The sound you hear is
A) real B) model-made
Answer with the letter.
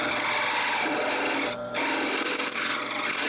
A